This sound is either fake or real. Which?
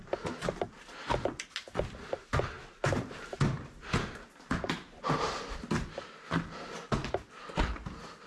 real